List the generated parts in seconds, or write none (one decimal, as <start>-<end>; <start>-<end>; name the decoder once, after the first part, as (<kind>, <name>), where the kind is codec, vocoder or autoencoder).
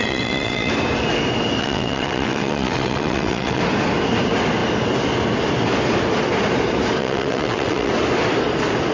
0.0-0.7 (vocoder, WaveNeXt); 1.6-3.6; 7.0-7.9